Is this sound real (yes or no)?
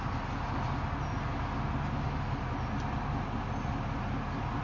yes